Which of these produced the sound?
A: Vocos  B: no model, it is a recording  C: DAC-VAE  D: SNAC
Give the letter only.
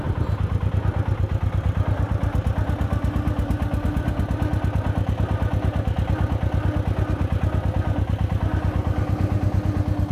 B